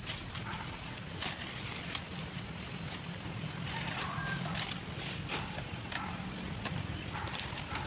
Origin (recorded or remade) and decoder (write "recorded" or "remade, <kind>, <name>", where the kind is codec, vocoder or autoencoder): recorded